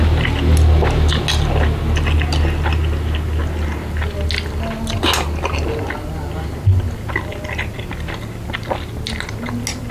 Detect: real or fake real